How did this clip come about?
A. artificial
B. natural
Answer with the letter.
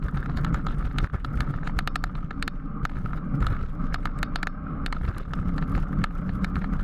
B